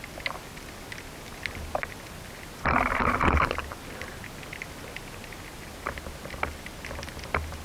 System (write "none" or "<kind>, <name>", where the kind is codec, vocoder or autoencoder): none